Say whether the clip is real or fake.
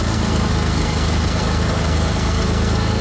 fake